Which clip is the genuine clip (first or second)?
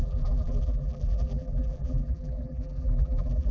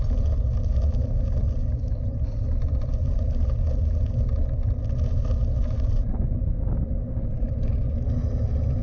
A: second